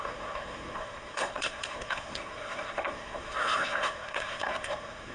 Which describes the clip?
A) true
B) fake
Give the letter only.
B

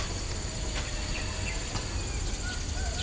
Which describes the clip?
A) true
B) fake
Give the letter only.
A